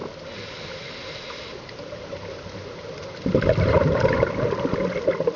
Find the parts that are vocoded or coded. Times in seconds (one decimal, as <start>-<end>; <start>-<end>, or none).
1.6-4.8